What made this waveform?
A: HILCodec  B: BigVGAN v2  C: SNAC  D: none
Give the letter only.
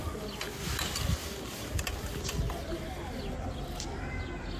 D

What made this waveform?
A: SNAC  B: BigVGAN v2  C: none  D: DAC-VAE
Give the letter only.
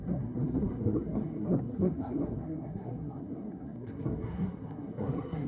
A